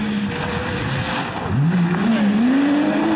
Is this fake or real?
real